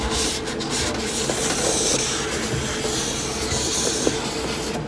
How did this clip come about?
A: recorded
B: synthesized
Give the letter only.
A